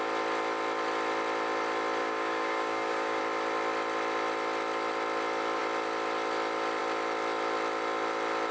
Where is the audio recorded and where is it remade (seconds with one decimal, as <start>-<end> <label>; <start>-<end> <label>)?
0.0-2.0 recorded; 2.0-3.2 remade; 3.2-8.5 recorded